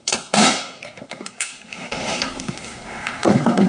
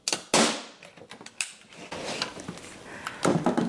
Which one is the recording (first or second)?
second